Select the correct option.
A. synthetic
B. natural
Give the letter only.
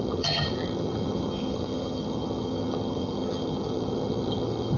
A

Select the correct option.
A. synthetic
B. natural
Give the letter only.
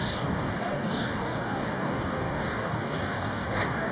A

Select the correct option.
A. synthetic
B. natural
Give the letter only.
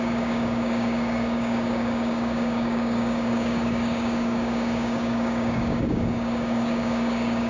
A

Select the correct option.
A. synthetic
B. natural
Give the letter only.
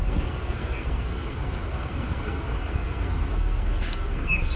A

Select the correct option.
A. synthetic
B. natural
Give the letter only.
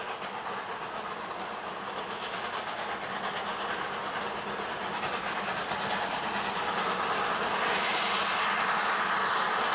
B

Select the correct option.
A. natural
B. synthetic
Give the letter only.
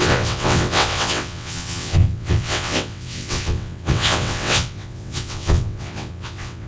B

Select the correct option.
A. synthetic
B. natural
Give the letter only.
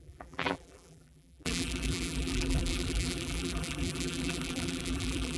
A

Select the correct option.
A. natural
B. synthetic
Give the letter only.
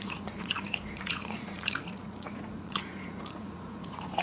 B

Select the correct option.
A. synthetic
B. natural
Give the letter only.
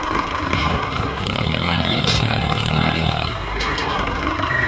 A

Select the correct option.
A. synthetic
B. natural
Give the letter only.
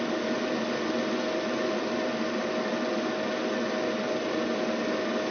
B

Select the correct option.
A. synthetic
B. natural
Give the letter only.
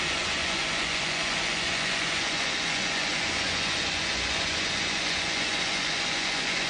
A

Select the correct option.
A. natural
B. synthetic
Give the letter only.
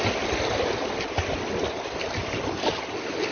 A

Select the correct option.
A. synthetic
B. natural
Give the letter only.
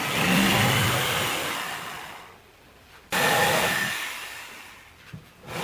B